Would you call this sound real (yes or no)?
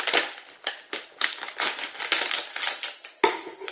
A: yes